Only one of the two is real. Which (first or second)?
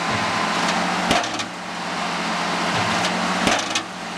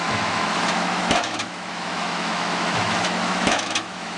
first